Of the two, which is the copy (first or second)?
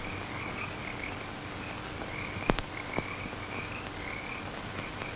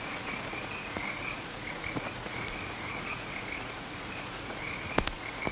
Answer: second